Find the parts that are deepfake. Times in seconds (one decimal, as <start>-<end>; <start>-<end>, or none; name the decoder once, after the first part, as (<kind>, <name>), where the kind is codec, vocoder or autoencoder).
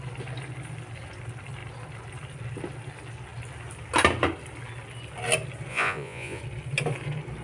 5.7-6.4 (vocoder, Vocos)